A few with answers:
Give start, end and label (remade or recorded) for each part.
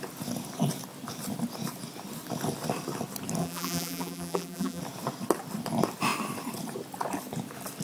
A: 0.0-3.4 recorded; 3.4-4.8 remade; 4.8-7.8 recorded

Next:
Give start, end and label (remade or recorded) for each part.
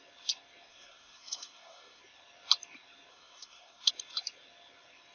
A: 0.0-0.7 recorded; 0.7-2.0 remade; 2.0-3.1 recorded; 3.1-3.9 remade; 3.9-5.1 recorded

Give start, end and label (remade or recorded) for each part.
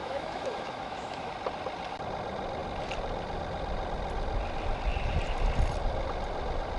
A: 0.0-1.3 remade; 1.3-6.8 recorded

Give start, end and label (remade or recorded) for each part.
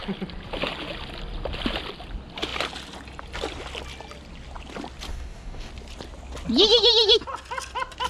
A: 0.0-5.1 recorded; 5.1-5.7 remade; 5.7-8.1 recorded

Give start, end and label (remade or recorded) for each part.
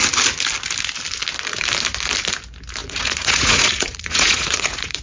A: 0.0-2.8 recorded; 2.8-5.0 remade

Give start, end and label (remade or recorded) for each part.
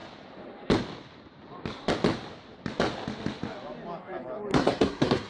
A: 0.0-4.5 recorded; 4.5-5.3 remade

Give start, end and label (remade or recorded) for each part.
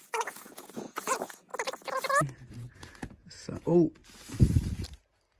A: 0.0-1.5 remade; 1.5-2.5 recorded; 2.5-4.0 remade; 4.0-5.4 recorded